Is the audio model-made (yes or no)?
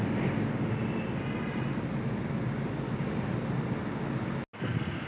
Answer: no